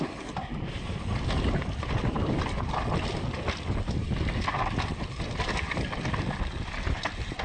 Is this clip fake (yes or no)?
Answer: no